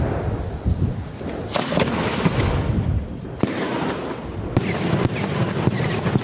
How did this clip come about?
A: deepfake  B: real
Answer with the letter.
B